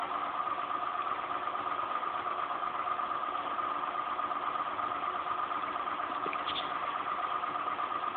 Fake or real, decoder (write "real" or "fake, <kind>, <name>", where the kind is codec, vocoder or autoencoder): real